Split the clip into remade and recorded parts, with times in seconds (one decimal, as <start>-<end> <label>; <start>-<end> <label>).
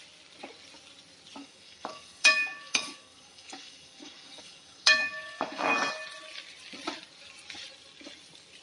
0.0-1.4 recorded; 1.4-5.7 remade; 5.7-8.6 recorded